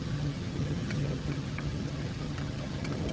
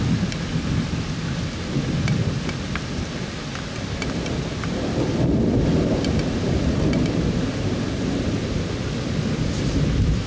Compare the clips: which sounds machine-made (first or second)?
first